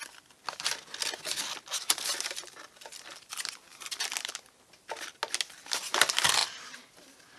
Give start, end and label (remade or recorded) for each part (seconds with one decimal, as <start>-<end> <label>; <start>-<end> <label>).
0.0-3.7 recorded; 3.7-4.3 remade; 4.3-6.4 recorded; 6.4-6.9 remade; 6.9-7.4 recorded